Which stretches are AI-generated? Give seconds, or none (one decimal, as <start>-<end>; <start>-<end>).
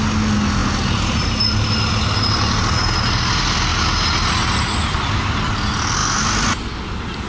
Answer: none